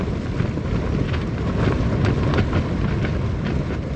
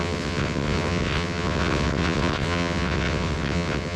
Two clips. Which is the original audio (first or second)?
first